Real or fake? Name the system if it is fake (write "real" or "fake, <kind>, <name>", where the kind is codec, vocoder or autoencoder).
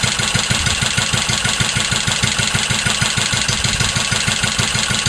real